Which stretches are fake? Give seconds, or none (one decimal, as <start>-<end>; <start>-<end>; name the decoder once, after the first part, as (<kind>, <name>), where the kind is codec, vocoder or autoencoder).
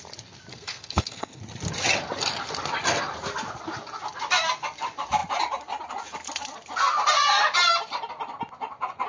0.5-1.4 (codec, SNAC)